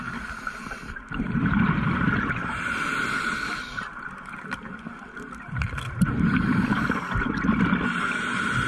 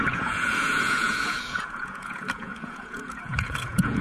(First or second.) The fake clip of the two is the second